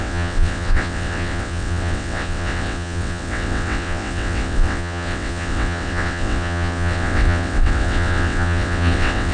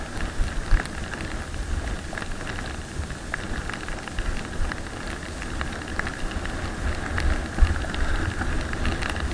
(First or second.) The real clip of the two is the second